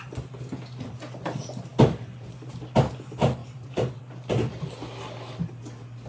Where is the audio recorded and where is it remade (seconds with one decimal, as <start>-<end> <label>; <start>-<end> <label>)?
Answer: 0.0-1.7 recorded; 1.7-2.5 remade; 2.5-3.4 recorded; 3.4-4.0 remade; 4.0-6.1 recorded